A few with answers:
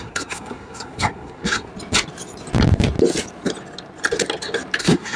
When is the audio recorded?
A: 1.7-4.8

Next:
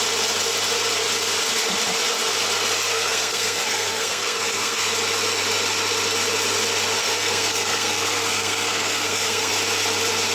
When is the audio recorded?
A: 0.0-2.9; 4.9-7.0; 9.5-10.3

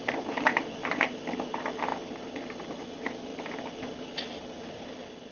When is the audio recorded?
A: 0.0-5.3

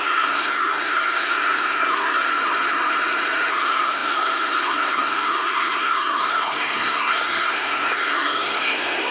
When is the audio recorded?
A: 2.3-3.5